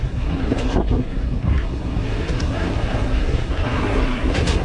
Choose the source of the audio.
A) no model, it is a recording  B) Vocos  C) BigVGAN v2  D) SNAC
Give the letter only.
D